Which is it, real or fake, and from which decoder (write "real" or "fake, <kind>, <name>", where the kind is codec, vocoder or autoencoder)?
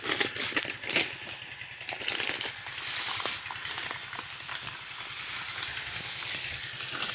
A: real